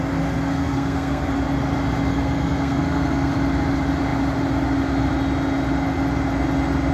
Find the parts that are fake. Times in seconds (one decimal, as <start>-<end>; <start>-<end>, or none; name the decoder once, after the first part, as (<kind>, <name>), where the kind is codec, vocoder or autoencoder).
0.5-1.3 (codec, SNAC); 2.1-3.3